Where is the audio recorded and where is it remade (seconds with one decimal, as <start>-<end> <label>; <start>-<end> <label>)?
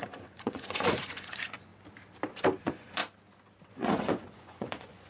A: 0.0-1.7 remade; 1.7-2.6 recorded; 2.6-3.0 remade; 3.0-3.7 recorded; 3.7-5.1 remade